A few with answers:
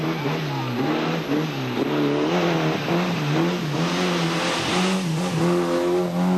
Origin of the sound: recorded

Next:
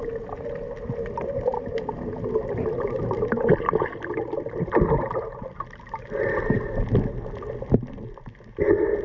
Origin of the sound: recorded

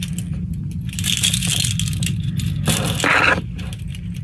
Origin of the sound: recorded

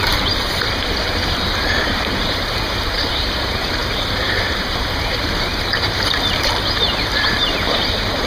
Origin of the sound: remade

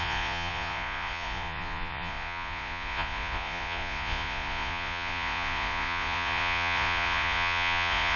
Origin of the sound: remade